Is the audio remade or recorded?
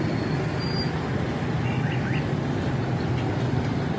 recorded